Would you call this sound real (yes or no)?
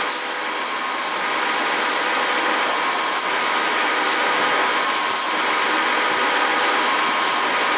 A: yes